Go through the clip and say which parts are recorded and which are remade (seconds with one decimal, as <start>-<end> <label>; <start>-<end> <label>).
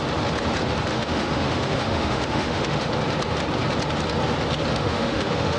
0.0-0.9 recorded; 0.9-2.9 remade; 2.9-4.7 recorded; 4.7-5.6 remade